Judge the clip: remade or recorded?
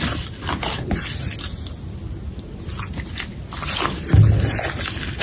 recorded